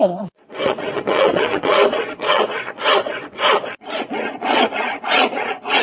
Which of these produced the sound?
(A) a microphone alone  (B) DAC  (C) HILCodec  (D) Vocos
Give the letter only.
D